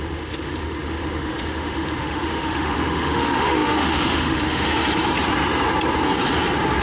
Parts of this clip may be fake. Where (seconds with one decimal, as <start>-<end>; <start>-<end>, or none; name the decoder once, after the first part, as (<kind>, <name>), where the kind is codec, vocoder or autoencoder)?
0.0-4.7 (autoencoder, DAC-VAE)